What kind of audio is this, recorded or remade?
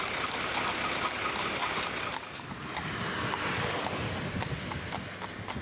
recorded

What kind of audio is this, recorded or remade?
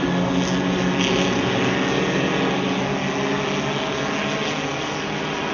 recorded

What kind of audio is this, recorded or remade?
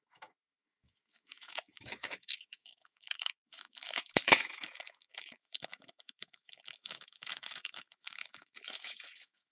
remade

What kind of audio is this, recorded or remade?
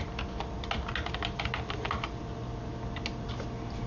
recorded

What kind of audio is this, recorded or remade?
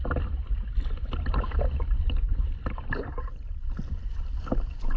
recorded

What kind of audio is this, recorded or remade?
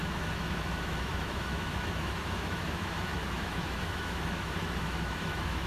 remade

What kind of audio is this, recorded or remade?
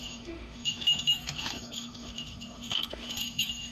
remade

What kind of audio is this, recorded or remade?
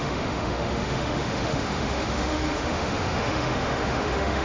remade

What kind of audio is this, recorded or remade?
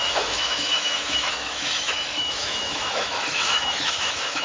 remade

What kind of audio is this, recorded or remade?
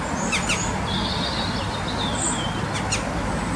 recorded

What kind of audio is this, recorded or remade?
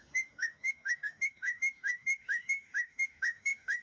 remade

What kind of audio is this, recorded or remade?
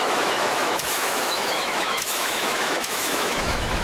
remade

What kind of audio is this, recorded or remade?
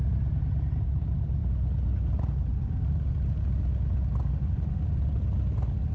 recorded